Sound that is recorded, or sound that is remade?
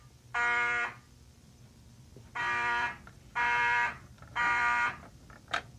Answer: remade